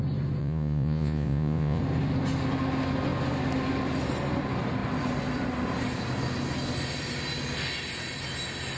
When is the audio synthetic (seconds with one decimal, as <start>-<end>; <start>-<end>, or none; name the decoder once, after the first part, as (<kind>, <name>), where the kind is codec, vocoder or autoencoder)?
0.4-1.8 (vocoder, Vocos)